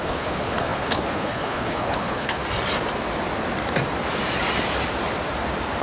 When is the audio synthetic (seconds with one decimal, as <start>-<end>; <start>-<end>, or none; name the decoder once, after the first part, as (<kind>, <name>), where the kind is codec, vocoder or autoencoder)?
0.0-2.4 (codec, HILCodec)